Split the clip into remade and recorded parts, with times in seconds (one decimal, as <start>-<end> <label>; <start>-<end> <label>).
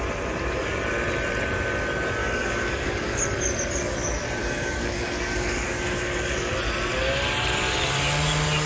0.0-2.2 recorded; 2.2-3.2 remade; 3.2-4.4 recorded; 4.4-6.5 remade; 6.5-8.7 recorded